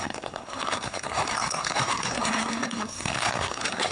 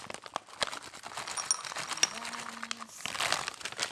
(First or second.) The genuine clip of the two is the second